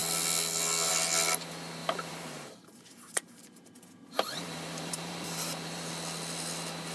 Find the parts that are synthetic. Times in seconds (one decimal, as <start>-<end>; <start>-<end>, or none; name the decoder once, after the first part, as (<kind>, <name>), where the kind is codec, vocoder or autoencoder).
1.8-5.9 (vocoder, BigVGAN v2)